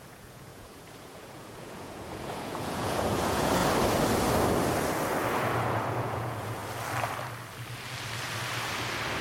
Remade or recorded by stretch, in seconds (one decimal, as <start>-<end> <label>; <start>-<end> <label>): 0.0-3.6 remade; 3.6-5.3 recorded; 5.3-6.6 remade; 6.6-9.2 recorded